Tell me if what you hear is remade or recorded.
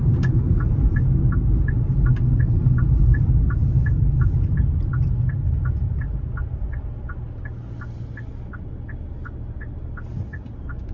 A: recorded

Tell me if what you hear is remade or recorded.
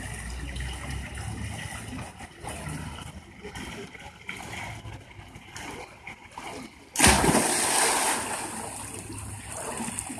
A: recorded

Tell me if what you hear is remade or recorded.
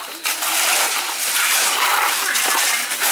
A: remade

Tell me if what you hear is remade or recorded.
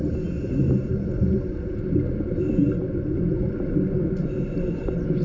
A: recorded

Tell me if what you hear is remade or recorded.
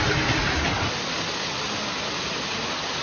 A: recorded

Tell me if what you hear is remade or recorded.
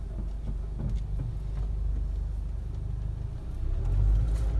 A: recorded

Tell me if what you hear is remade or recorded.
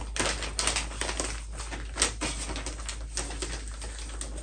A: recorded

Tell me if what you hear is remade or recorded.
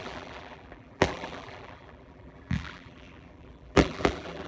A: remade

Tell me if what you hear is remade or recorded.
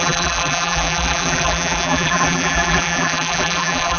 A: remade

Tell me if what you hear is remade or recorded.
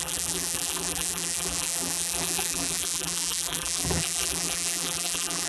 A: remade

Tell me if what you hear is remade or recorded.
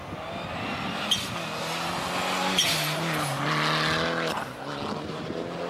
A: recorded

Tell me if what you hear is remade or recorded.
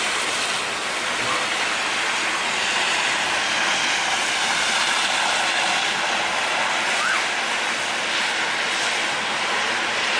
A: recorded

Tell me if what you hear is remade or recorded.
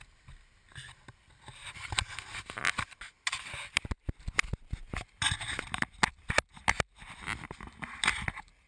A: recorded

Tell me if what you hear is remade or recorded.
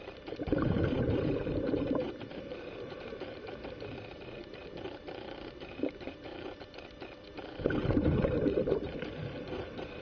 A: remade